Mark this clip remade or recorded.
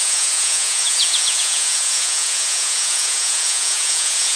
remade